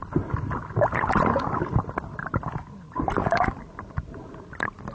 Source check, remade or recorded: recorded